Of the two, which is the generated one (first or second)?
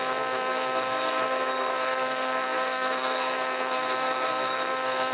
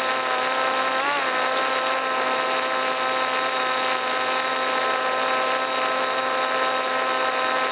first